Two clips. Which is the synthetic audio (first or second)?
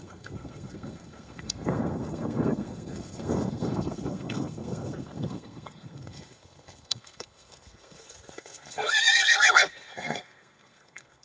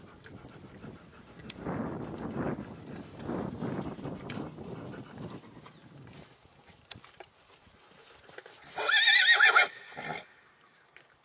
first